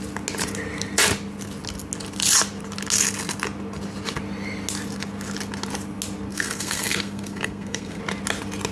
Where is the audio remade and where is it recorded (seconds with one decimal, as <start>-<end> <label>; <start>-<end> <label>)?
0.0-6.3 recorded; 6.3-8.0 remade; 8.0-8.7 recorded